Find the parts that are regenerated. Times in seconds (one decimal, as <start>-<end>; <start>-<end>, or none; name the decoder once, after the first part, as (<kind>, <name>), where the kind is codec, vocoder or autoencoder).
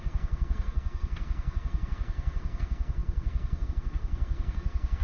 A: 0.0-5.0 (codec, SNAC)